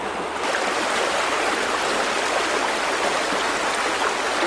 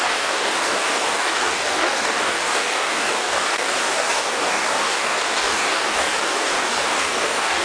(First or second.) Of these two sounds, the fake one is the second